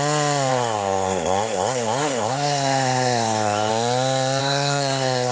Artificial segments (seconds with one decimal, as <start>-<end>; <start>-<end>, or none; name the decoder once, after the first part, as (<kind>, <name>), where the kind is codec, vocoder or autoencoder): 0.5-3.7 (codec, SNAC); 4.4-5.3